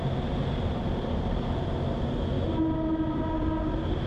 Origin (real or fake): real